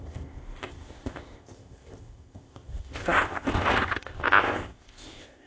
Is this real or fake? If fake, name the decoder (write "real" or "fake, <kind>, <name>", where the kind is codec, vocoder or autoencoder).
fake, codec, ZipCodec